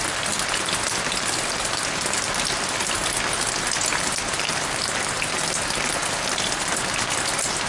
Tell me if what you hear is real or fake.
real